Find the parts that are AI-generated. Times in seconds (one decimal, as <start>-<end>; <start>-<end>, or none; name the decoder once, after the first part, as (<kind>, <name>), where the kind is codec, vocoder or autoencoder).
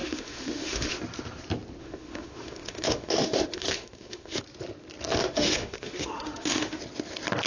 0.0-1.0 (autoencoder, DAC-VAE); 1.8-4.4; 5.2-6.8